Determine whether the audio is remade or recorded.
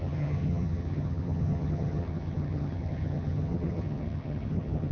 remade